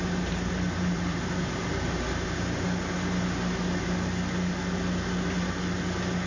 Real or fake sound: real